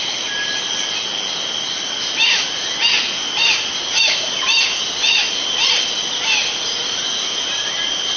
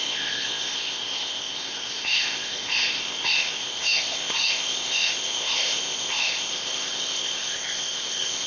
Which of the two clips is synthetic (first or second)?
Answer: second